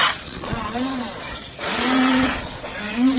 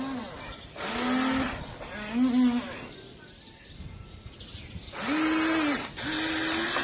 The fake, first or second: first